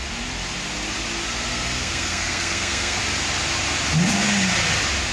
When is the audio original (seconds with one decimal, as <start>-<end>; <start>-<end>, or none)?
0.0-1.5; 3.0-5.1